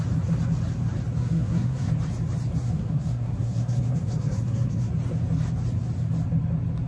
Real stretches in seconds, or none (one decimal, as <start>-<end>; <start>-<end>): 0.0-1.2; 1.9-2.6; 4.9-6.9